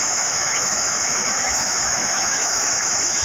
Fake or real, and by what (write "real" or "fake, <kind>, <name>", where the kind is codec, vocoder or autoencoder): fake, autoencoder, DAC-VAE